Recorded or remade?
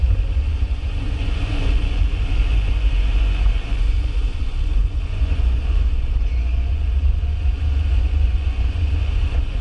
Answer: remade